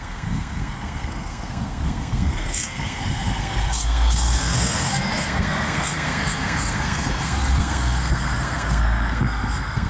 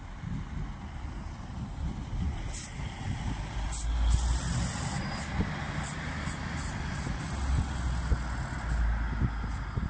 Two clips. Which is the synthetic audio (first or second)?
first